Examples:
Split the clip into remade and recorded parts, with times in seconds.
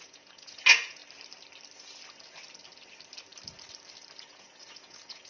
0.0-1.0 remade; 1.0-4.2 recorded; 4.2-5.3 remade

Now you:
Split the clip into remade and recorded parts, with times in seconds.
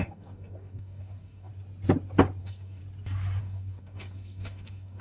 0.0-1.5 remade; 1.5-2.4 recorded; 2.4-2.8 remade; 2.8-3.4 recorded; 3.4-5.0 remade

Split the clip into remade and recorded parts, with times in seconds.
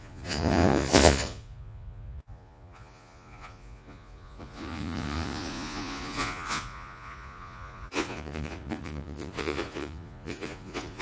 0.0-11.0 remade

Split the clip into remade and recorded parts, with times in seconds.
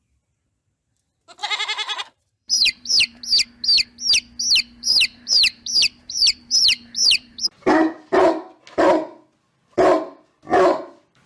0.0-1.4 recorded; 1.4-3.2 remade; 3.2-4.8 recorded; 4.8-7.6 remade; 7.6-11.3 recorded